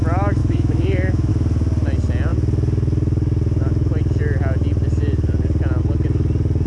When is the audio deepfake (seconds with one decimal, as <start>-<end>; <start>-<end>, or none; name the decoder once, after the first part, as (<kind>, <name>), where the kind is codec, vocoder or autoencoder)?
0.4-1.3 (autoencoder, DAC-VAE)